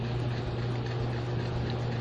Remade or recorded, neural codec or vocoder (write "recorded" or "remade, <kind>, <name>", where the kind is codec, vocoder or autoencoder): recorded